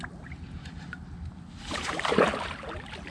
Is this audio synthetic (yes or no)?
no